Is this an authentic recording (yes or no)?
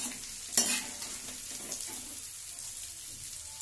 yes